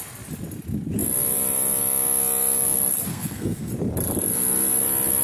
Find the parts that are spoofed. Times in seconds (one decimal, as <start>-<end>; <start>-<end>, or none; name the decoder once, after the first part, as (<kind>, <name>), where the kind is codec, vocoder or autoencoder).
3.1-3.7 (codec, SNAC)